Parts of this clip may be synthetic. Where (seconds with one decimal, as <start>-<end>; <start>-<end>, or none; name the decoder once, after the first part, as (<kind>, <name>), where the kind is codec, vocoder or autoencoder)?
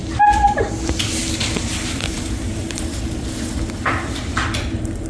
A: 0.0-1.2 (vocoder, BigVGAN v2); 2.6-4.2